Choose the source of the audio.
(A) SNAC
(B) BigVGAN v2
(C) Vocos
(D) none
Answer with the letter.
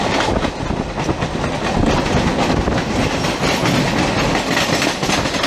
D